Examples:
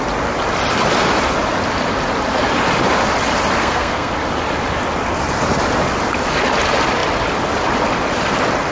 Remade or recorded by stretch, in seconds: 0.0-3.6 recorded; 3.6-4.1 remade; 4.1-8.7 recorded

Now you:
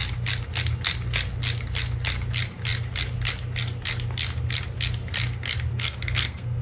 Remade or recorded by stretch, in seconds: 0.0-5.7 recorded; 5.7-6.6 remade

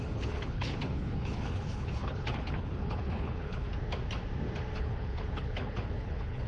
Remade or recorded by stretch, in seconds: 0.0-3.7 remade; 3.7-4.8 recorded; 4.8-6.5 remade

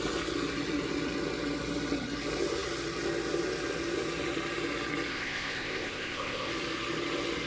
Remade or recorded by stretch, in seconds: 0.0-5.1 recorded; 5.1-6.5 remade; 6.5-7.5 recorded

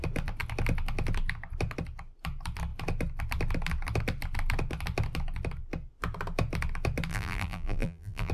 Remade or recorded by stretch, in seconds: 0.0-7.1 recorded; 7.1-8.3 remade

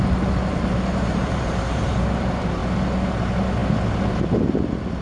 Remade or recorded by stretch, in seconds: 0.0-0.5 recorded; 0.5-2.0 remade; 2.0-5.0 recorded

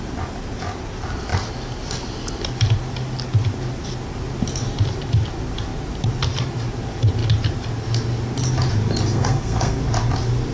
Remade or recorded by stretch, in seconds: 0.0-9.1 recorded; 9.1-9.8 remade; 9.8-10.5 recorded

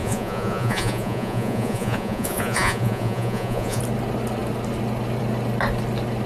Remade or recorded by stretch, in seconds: 0.0-3.8 remade; 3.8-6.3 recorded